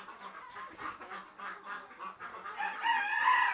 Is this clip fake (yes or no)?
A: no